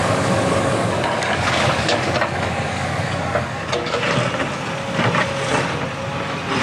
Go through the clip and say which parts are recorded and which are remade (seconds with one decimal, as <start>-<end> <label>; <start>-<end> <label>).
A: 0.0-4.0 remade; 4.0-6.6 recorded